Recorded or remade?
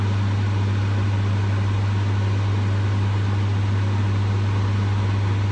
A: recorded